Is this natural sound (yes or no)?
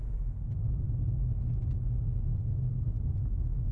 yes